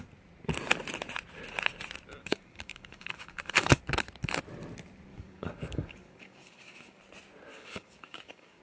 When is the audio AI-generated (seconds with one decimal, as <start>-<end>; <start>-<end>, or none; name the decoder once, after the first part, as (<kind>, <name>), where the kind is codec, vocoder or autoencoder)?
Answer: 2.2-3.8 (codec, DAC); 5.1-7.0; 7.5-8.6

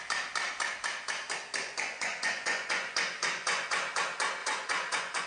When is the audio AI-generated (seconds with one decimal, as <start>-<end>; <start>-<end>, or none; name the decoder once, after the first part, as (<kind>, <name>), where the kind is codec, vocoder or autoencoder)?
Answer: 1.6-4.0 (vocoder, Vocos); 4.4-5.3

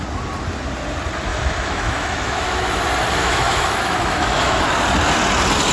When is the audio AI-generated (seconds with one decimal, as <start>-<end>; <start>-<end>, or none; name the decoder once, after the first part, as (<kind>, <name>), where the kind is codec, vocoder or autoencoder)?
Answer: 1.3-2.8 (autoencoder, DAC-VAE); 3.2-4.6

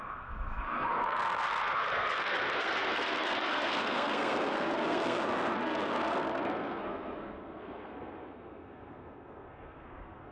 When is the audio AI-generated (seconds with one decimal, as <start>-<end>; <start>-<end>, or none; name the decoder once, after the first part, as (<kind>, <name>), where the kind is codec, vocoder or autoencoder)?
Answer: 0.0-10.3 (codec, SNAC)

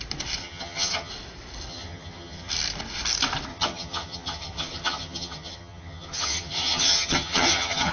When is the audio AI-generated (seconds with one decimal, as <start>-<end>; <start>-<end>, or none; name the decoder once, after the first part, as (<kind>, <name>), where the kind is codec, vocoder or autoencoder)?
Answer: 0.4-1.1 (vocoder, HiFi-GAN); 1.7-2.5; 3.5-7.9

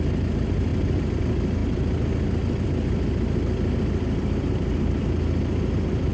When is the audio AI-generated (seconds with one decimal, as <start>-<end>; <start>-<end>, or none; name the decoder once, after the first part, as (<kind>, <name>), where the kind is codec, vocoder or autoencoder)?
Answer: none

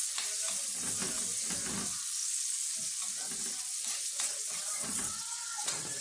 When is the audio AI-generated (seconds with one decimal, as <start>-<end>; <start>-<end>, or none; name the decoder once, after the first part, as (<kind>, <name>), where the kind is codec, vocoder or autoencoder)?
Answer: 4.1-6.0 (vocoder, WaveNeXt)

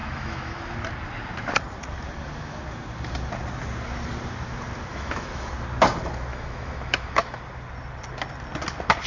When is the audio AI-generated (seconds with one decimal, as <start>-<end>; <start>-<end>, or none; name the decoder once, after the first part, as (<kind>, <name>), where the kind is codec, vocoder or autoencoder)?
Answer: 0.0-0.6 (autoencoder, DAC-VAE); 4.9-5.5; 6.3-7.4